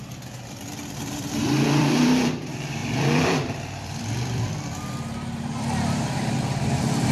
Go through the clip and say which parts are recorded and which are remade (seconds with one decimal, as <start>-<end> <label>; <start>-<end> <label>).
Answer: 0.0-7.1 remade